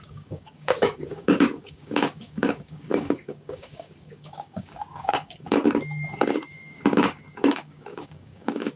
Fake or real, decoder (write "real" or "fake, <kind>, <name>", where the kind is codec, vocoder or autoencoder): fake, codec, DAC